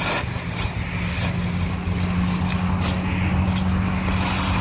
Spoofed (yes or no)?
no